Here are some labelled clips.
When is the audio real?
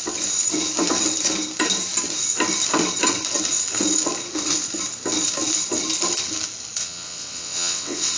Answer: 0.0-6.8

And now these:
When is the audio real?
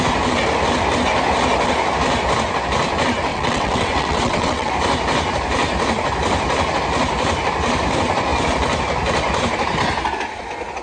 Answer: 0.0-3.3; 4.7-10.8